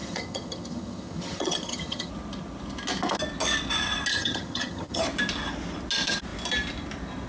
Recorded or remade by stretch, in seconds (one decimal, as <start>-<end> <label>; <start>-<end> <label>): 0.0-2.1 remade; 2.1-4.1 recorded; 4.1-5.0 remade; 5.0-7.3 recorded